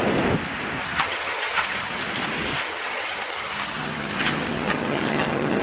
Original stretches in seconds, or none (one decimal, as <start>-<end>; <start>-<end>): 0.0-0.8; 2.0-2.5